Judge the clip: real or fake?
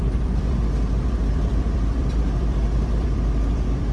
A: fake